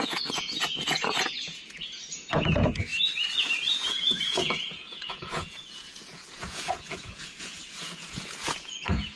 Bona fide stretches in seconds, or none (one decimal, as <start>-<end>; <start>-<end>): 2.9-3.7

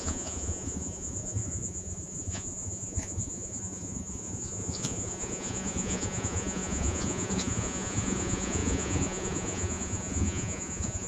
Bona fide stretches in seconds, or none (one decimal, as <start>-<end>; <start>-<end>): none

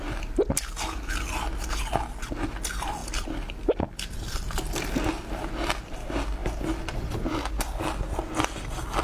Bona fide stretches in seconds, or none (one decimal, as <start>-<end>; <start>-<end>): 0.0-9.0

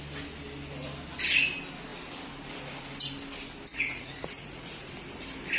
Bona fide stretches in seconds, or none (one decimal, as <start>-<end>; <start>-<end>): 0.0-3.7; 4.9-5.6

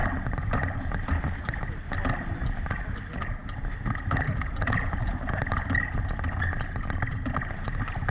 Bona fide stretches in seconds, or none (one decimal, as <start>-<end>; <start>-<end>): 0.0-8.1